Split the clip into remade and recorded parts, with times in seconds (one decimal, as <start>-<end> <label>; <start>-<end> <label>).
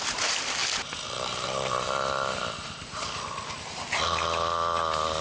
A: 0.0-5.2 recorded